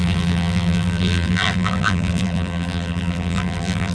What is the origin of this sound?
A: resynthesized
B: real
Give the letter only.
A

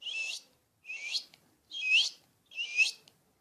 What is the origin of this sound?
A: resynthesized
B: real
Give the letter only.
B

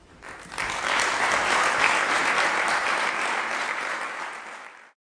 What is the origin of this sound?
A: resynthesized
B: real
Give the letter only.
A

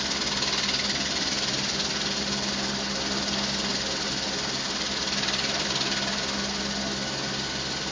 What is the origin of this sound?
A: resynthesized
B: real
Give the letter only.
B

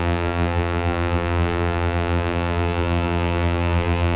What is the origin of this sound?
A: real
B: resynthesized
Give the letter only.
B